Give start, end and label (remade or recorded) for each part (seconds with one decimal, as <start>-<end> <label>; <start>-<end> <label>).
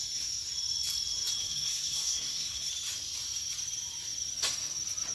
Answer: 0.0-1.4 recorded; 1.4-2.7 remade; 2.7-5.1 recorded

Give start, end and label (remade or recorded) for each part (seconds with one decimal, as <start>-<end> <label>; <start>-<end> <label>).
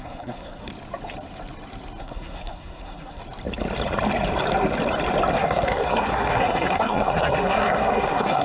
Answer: 0.0-0.7 remade; 0.7-2.0 recorded; 2.0-3.2 remade; 3.2-5.3 recorded; 5.3-8.4 remade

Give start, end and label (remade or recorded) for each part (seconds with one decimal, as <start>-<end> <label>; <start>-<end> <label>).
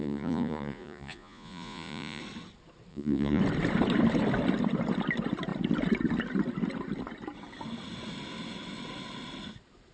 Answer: 0.0-2.2 remade; 2.2-2.9 recorded; 2.9-3.4 remade; 3.4-9.9 recorded